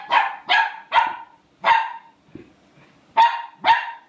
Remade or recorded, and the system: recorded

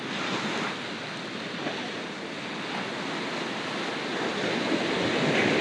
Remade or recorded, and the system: recorded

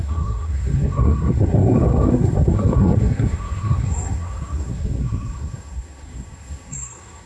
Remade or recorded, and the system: remade, codec, SNAC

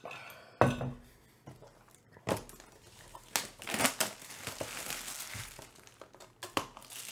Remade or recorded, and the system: recorded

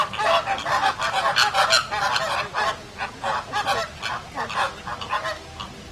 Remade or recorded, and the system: recorded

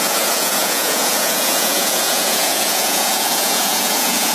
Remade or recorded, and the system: remade, vocoder, Vocos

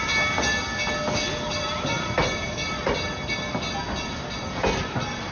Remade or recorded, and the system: recorded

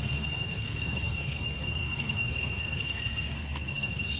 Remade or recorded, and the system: remade, codec, SNAC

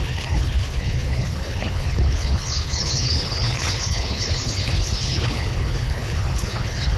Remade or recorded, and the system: remade, codec, HILCodec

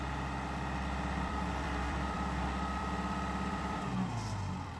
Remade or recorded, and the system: remade, vocoder, BigVGAN v2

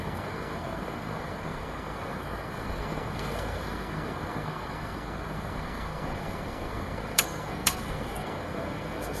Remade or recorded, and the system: remade, codec, SNAC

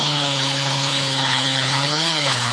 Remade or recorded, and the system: remade, codec, HILCodec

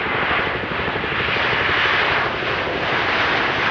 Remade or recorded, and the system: recorded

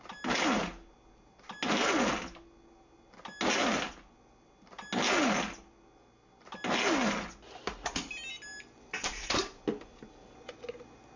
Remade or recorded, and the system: recorded